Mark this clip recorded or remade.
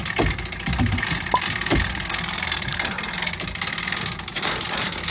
recorded